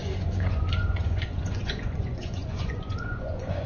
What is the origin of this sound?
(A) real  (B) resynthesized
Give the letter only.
B